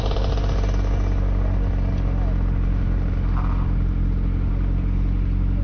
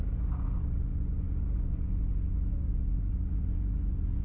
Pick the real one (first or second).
first